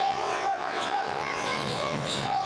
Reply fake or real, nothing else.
fake